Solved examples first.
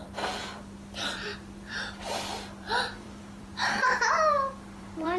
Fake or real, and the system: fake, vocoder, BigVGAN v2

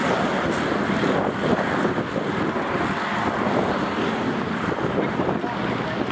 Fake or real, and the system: real